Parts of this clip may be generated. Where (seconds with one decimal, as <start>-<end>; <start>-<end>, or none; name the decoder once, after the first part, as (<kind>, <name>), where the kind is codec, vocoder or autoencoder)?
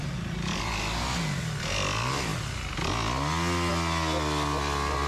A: none